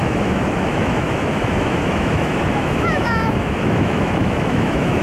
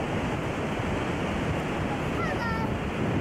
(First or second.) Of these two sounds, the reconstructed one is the first